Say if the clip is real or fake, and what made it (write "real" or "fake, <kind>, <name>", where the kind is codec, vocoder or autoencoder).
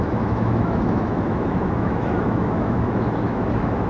fake, autoencoder, DAC-VAE